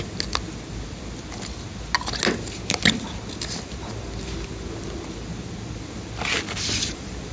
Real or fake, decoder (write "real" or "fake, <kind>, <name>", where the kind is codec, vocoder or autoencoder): real